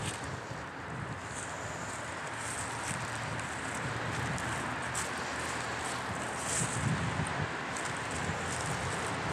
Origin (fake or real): real